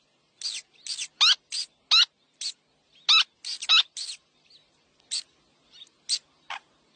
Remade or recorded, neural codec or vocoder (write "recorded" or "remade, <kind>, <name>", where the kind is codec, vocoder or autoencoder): recorded